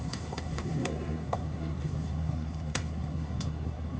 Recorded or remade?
remade